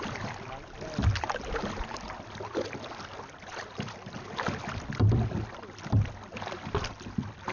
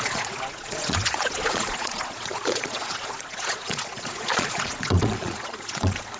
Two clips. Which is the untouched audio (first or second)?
first